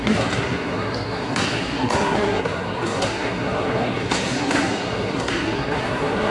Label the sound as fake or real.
fake